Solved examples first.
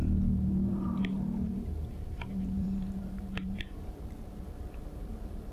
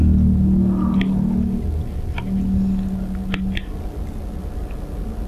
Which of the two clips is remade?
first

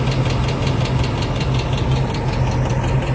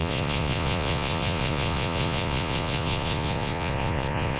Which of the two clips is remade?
second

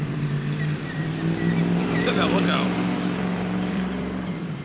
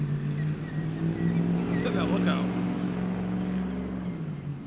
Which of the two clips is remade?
first